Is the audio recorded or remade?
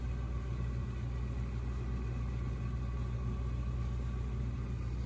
recorded